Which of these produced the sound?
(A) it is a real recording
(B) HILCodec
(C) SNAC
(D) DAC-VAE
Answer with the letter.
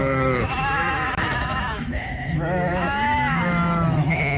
D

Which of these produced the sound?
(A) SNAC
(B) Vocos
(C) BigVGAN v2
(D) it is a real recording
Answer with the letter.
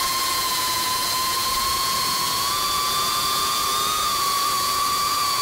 B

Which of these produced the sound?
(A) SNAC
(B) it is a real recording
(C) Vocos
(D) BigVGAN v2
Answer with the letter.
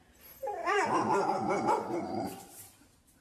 D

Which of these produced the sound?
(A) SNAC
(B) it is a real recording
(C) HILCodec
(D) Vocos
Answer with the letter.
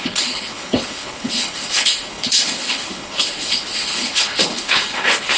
C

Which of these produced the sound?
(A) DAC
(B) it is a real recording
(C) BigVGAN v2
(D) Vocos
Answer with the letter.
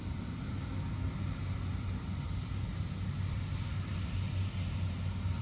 B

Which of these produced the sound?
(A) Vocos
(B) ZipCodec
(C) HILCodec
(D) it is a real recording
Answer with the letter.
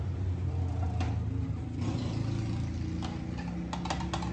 D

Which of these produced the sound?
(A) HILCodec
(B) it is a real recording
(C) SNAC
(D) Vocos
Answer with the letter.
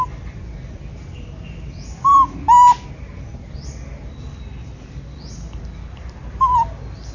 B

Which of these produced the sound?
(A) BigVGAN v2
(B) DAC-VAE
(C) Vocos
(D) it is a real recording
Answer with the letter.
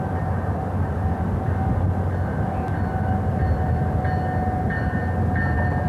D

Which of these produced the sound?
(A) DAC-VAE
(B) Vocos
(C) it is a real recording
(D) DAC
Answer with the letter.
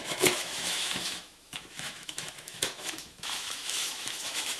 A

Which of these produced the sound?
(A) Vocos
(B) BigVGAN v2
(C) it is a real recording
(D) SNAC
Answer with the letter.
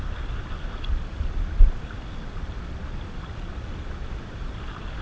C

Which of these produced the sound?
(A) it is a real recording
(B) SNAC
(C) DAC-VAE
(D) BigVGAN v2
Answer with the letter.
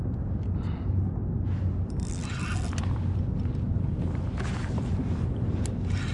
A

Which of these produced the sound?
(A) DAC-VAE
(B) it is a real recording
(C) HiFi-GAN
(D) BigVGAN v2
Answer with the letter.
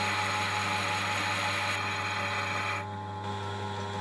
B